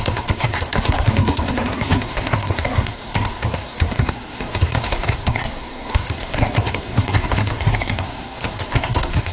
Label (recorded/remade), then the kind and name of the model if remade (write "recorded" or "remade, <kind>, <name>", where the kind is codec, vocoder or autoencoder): remade, codec, SNAC